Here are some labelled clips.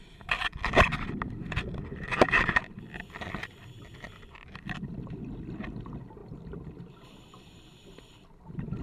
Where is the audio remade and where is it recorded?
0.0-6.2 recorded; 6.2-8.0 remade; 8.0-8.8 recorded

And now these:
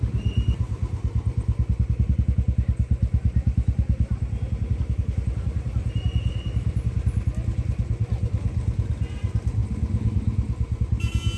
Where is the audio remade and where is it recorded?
0.0-11.4 recorded

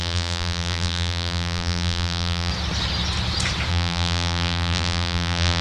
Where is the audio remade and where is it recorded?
0.0-2.5 remade; 2.5-3.7 recorded; 3.7-5.6 remade

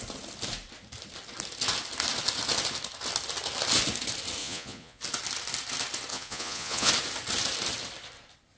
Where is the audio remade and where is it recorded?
0.0-4.4 recorded; 4.4-5.0 remade; 5.0-6.1 recorded; 6.1-6.9 remade; 6.9-8.6 recorded

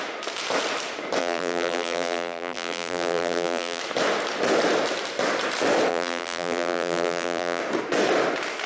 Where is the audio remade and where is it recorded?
0.0-1.2 recorded; 1.2-3.8 remade; 3.8-5.9 recorded; 5.9-7.6 remade; 7.6-8.7 recorded

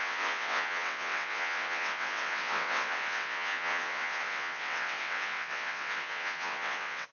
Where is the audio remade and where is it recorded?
0.0-7.1 remade

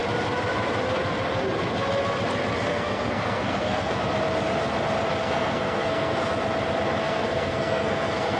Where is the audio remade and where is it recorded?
0.0-2.7 recorded; 2.7-4.0 remade; 4.0-5.2 recorded; 5.2-6.3 remade; 6.3-7.0 recorded; 7.0-8.4 remade